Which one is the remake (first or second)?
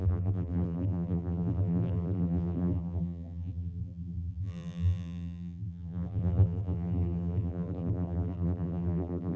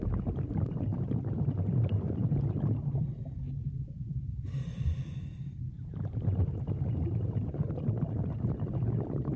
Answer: first